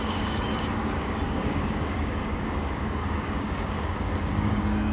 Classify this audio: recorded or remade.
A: remade